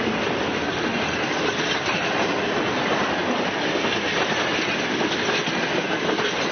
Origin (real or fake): real